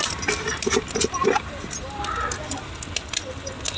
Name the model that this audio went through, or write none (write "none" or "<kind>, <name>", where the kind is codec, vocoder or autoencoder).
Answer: none